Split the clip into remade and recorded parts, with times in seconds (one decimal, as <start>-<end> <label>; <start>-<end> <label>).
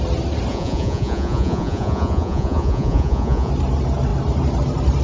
0.0-0.5 recorded; 0.5-3.5 remade; 3.5-5.0 recorded